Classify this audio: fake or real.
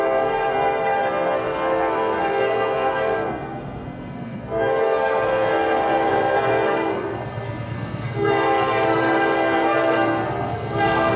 fake